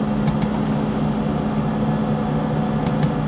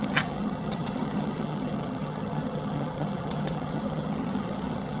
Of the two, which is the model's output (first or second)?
second